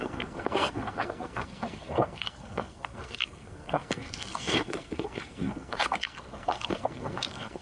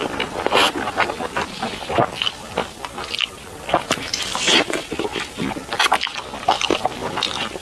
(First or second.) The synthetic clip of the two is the first